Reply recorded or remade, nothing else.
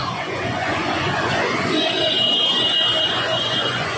remade